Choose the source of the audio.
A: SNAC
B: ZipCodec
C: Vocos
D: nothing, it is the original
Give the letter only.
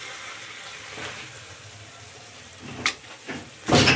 D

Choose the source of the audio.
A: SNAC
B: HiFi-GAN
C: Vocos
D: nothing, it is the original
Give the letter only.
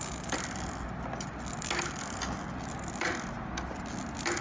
D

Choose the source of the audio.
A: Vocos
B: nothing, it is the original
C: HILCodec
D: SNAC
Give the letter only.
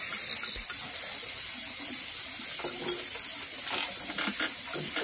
B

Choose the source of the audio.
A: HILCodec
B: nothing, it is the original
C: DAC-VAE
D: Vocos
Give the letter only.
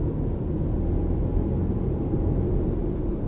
B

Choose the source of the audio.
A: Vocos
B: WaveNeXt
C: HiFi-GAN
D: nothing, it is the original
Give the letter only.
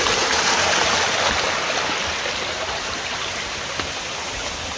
D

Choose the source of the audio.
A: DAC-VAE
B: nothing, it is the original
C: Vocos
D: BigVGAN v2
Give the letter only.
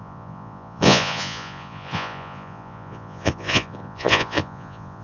C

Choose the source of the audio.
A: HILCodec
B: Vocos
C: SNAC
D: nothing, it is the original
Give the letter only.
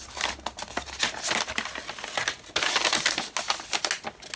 D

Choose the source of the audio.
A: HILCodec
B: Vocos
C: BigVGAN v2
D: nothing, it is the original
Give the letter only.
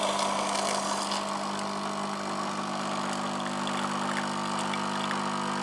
D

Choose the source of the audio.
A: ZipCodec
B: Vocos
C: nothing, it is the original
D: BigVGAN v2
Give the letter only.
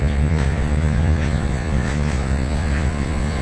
B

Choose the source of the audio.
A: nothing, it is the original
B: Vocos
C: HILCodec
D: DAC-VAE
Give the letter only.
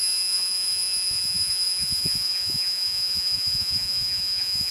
B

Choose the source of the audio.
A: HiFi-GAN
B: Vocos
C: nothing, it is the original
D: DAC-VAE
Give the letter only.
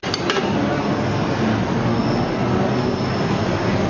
C